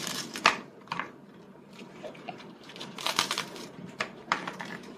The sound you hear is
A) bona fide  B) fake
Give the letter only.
B